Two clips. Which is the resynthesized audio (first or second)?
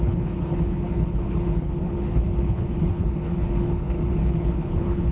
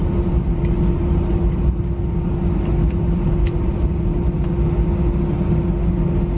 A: first